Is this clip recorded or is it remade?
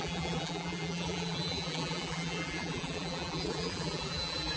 remade